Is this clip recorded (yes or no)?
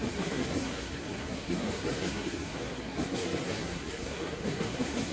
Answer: no